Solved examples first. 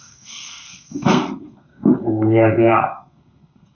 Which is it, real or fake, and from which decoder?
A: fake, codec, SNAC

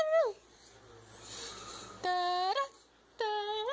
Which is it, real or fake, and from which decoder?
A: real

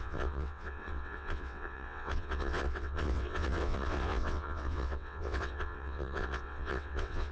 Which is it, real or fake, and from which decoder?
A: fake, vocoder, WaveNeXt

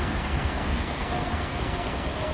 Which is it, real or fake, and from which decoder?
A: fake, codec, SNAC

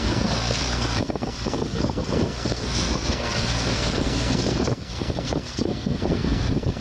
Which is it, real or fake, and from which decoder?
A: fake, codec, SNAC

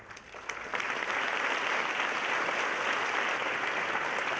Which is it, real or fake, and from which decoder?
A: real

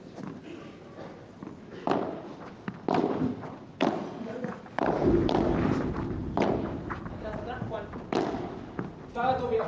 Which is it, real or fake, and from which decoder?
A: real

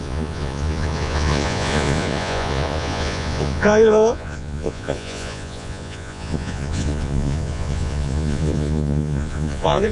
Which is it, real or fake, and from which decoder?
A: fake, vocoder, Vocos